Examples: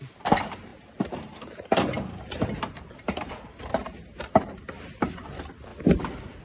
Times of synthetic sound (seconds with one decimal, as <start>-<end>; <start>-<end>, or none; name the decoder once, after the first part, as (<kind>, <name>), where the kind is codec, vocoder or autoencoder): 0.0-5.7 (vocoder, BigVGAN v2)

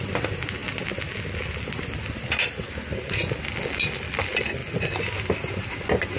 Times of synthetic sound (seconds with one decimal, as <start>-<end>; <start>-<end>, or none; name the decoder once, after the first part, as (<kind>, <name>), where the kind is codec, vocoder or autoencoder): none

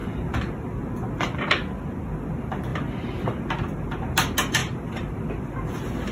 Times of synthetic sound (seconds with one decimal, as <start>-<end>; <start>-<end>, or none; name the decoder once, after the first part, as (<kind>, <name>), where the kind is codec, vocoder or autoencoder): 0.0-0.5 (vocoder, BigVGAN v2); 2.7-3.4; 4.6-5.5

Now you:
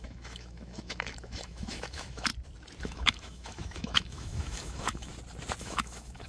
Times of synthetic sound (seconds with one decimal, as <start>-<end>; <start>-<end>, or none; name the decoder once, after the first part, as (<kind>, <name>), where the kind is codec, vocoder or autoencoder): 0.0-2.3 (autoencoder, DAC-VAE); 2.8-5.1; 5.6-6.3